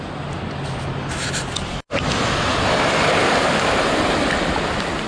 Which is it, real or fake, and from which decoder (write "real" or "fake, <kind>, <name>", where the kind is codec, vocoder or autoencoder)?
real